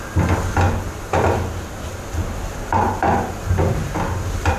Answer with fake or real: real